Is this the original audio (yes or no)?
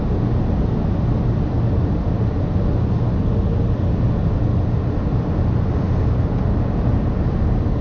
yes